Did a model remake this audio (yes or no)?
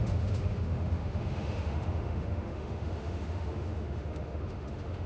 yes